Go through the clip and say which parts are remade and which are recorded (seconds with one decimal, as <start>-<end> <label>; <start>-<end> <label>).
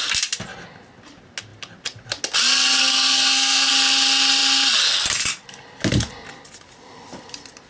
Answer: 0.0-2.8 recorded; 2.8-3.7 remade; 3.7-7.7 recorded